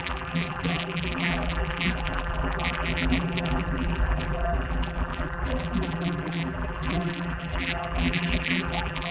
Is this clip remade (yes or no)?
yes